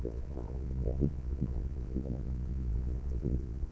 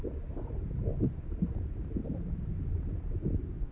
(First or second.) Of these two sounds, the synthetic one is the first